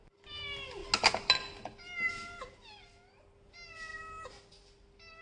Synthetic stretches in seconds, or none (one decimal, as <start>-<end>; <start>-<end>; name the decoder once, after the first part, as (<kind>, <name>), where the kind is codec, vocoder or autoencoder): none